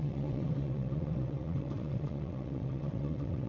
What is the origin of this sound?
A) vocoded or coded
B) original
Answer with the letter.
A